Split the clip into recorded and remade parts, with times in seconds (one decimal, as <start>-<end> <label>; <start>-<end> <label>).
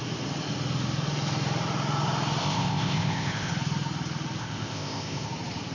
0.0-2.4 recorded; 2.4-3.5 remade; 3.5-4.4 recorded; 4.4-5.3 remade; 5.3-5.7 recorded